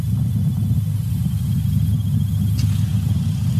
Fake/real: real